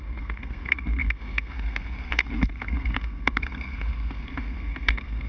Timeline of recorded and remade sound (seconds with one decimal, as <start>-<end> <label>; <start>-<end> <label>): 0.0-5.3 remade

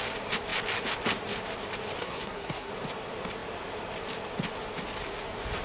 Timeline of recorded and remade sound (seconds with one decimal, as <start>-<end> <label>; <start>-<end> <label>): 0.0-2.0 recorded; 2.0-2.7 remade; 2.7-5.6 recorded

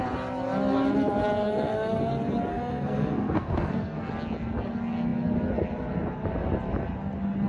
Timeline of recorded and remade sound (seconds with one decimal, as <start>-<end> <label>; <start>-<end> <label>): 0.0-1.4 recorded; 1.4-2.0 remade; 2.0-2.5 recorded; 2.5-4.1 remade; 4.1-7.5 recorded

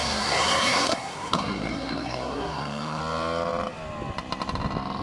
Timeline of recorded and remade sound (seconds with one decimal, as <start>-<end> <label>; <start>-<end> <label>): 0.0-3.0 remade; 3.0-5.0 recorded